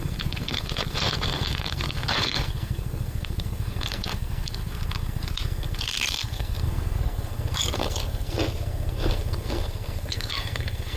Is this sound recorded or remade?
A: remade